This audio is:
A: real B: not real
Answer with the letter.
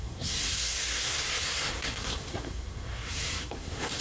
B